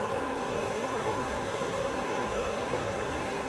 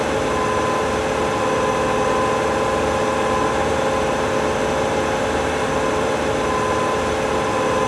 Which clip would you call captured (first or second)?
second